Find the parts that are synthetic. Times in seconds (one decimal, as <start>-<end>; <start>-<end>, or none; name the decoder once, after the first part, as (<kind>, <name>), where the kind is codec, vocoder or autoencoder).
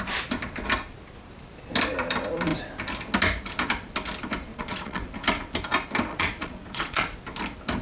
4.5-5.1 (vocoder, Vocos); 6.1-7.2